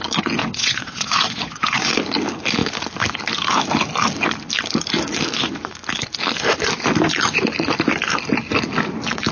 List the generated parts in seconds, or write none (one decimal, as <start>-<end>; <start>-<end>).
0.4-1.9